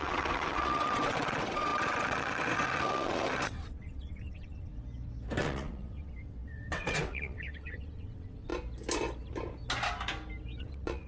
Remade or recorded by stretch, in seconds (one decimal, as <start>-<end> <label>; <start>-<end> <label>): 0.0-4.7 remade; 4.7-5.4 recorded; 5.4-8.5 remade; 8.5-10.6 recorded; 10.6-11.1 remade